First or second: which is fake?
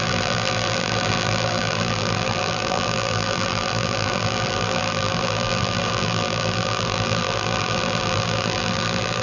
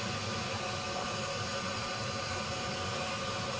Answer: first